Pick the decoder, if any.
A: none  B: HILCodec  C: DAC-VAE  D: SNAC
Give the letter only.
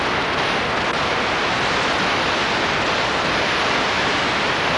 A